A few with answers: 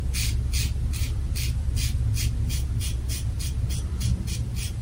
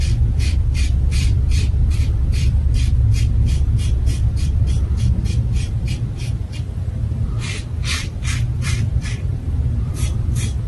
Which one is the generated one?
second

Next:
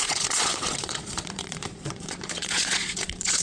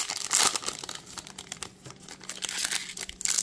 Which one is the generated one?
first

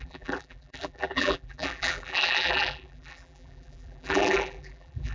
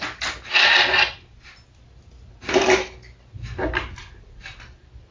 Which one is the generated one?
first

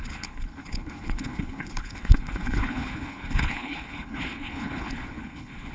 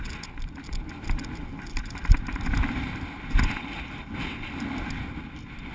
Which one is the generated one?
first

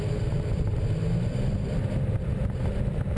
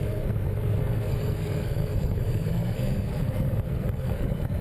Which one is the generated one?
second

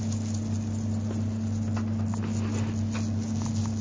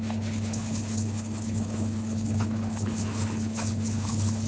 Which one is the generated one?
second